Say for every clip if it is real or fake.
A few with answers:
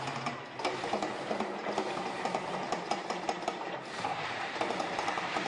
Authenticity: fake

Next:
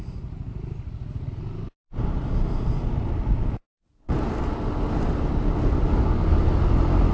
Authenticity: real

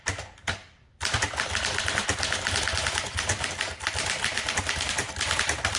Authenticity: real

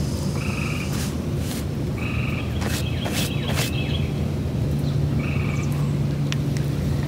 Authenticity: real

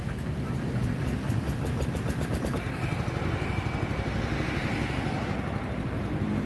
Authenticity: real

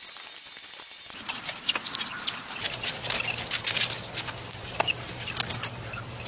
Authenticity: real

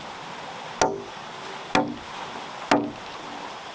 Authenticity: real